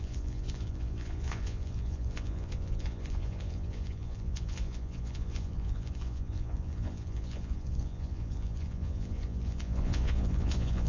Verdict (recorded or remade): remade